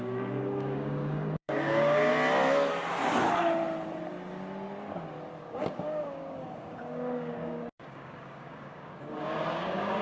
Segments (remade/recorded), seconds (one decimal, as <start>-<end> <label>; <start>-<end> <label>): 0.0-2.1 remade; 2.1-5.4 recorded; 5.4-10.0 remade